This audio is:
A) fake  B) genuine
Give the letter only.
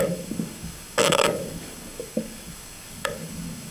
A